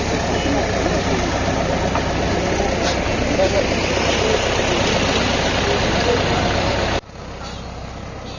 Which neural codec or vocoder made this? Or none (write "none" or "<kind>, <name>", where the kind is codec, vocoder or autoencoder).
none